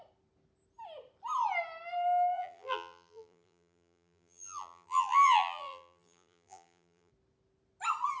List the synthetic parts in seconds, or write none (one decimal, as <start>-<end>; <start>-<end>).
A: 2.3-7.1